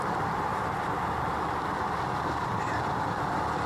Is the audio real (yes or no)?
no